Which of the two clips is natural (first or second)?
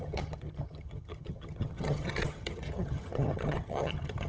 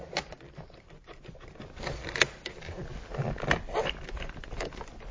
second